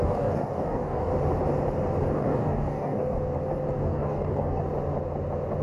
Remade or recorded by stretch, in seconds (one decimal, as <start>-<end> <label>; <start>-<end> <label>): 0.0-1.1 remade; 1.1-2.1 recorded; 2.1-3.2 remade; 3.2-3.8 recorded; 3.8-4.6 remade; 4.6-5.6 recorded